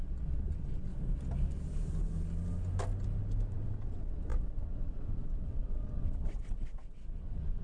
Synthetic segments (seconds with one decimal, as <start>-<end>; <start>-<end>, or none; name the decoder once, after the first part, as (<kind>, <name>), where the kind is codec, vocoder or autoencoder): 0.0-0.9 (vocoder, WaveNeXt); 3.5-7.6